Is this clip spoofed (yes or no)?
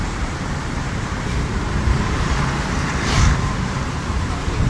yes